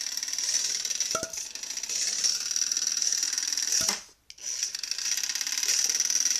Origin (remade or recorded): recorded